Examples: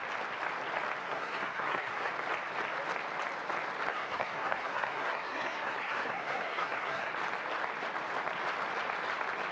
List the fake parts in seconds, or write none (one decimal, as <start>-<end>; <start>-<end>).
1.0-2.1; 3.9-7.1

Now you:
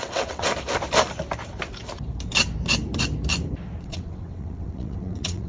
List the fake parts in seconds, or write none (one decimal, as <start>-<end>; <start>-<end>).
0.0-0.5; 3.8-5.5

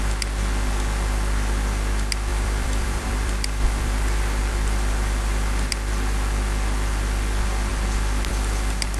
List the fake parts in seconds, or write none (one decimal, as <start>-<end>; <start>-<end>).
2.3-5.7

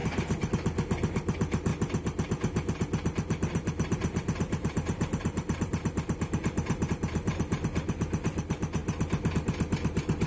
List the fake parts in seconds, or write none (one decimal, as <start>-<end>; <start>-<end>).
none

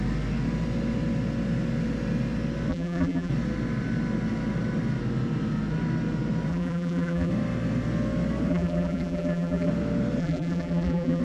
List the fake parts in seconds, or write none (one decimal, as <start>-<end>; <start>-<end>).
2.7-3.3; 6.5-7.3; 8.5-9.7; 10.2-11.2

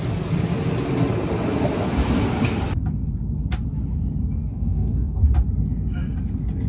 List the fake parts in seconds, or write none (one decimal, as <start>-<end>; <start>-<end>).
4.5-5.2

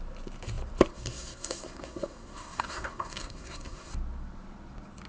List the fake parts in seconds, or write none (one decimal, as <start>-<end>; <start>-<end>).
0.9-3.9

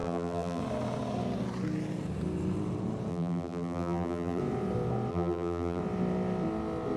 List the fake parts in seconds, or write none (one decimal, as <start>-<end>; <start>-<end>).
0.0-0.6; 3.1-4.4; 5.1-5.8